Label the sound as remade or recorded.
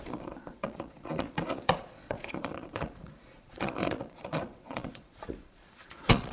remade